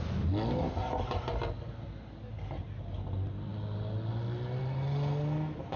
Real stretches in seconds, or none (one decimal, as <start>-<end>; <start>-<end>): 0.0-5.8